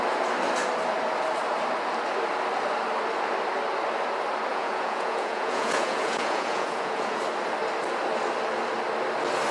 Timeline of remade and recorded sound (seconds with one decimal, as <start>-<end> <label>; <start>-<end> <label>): 0.0-4.5 recorded; 4.5-7.2 remade; 7.2-9.5 recorded